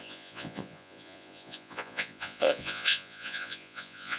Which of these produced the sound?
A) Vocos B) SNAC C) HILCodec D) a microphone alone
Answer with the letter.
A